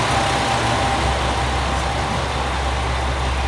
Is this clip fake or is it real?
real